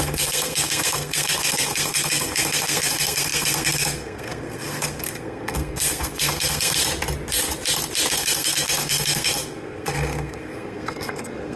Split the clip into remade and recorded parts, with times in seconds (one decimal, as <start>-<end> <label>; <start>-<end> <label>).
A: 0.0-6.8 remade; 6.8-8.1 recorded; 8.1-11.6 remade